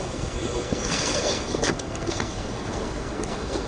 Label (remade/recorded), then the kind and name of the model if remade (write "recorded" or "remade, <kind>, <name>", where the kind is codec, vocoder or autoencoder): remade, codec, SNAC